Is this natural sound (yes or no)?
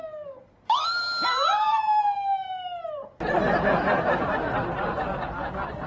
yes